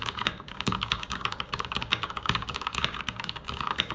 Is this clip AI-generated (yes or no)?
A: yes